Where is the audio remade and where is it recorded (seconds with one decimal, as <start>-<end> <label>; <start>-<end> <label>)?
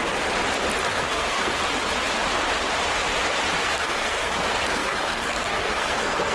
0.0-0.9 recorded; 0.9-1.6 remade; 1.6-3.6 recorded; 3.6-6.3 remade